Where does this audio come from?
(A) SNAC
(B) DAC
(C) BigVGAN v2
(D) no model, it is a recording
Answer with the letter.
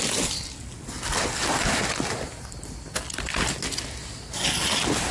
D